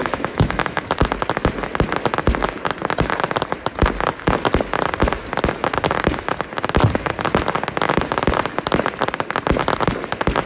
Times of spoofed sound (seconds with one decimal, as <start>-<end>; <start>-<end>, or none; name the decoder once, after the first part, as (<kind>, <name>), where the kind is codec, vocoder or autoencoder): 0.0-0.9 (autoencoder, DAC-VAE)